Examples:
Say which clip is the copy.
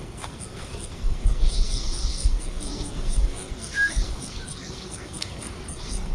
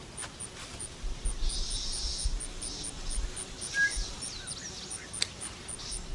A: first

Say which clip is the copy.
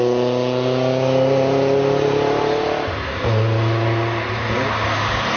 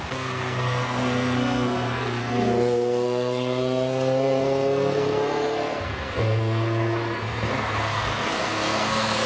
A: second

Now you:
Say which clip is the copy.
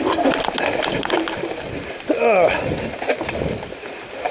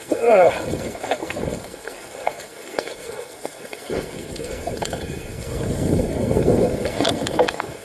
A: second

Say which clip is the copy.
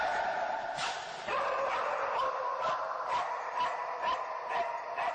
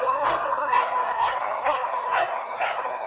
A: second